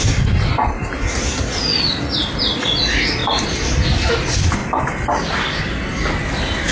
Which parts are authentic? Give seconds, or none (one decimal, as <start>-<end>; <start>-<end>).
0.0-6.7